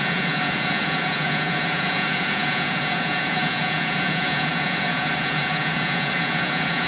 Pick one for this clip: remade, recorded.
remade